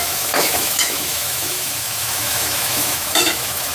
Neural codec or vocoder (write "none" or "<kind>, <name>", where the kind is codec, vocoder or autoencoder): autoencoder, DAC-VAE